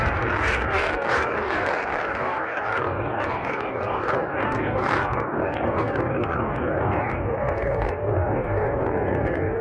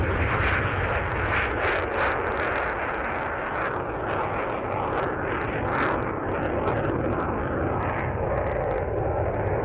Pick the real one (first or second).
second